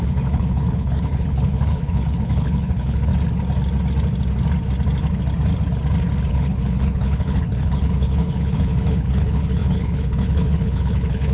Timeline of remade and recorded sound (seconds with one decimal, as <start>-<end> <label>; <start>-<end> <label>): 0.0-3.1 remade; 3.1-6.3 recorded; 6.3-11.3 remade

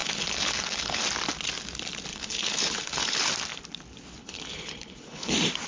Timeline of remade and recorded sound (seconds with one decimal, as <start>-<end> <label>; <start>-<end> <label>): 0.0-1.0 remade; 1.0-2.1 recorded; 2.1-3.3 remade; 3.3-4.2 recorded; 4.2-5.3 remade; 5.3-5.7 recorded

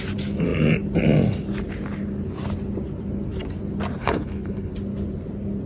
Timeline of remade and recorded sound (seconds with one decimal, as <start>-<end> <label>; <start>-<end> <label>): 0.0-4.0 recorded; 4.0-4.7 remade; 4.7-5.7 recorded

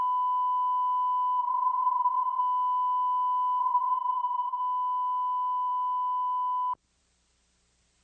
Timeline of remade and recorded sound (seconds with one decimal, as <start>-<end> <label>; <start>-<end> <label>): 0.0-1.4 recorded; 1.4-2.4 remade; 2.4-3.6 recorded; 3.6-4.6 remade; 4.6-8.0 recorded

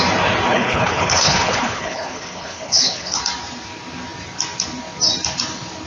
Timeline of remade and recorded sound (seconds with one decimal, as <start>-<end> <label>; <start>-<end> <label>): 0.0-0.5 recorded; 0.5-3.2 remade; 3.2-5.9 recorded

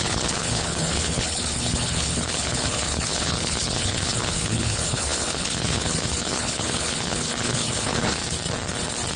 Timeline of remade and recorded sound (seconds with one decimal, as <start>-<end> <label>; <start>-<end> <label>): 0.0-8.2 remade; 8.2-9.2 recorded

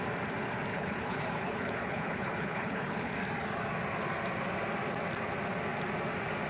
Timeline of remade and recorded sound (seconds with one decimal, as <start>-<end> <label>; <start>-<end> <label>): 0.0-0.7 recorded; 0.7-3.1 remade; 3.1-6.5 recorded